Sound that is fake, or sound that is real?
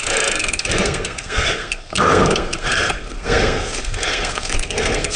fake